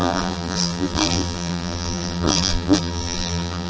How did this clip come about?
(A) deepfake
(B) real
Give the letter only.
A